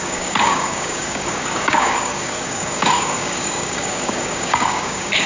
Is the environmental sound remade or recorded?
remade